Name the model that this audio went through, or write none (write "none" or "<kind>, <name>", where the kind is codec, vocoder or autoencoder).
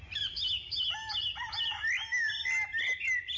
none